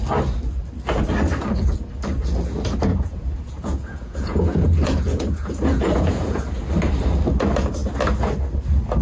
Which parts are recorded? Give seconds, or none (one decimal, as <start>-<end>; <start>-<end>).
0.0-2.9; 6.6-9.0